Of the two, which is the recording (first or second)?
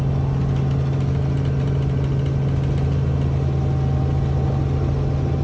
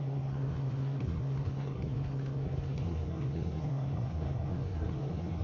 first